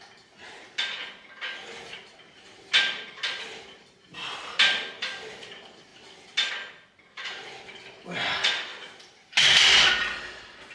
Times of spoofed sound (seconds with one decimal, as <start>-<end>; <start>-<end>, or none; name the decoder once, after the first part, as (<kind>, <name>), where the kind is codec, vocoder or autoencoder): 8.7-9.9 (vocoder, BigVGAN v2)